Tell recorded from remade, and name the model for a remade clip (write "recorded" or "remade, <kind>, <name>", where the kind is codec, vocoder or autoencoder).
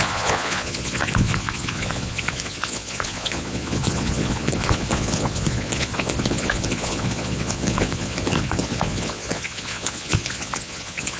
remade, vocoder, Vocos